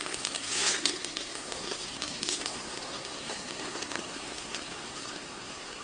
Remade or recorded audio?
remade